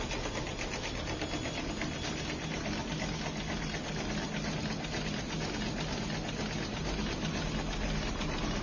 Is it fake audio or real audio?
real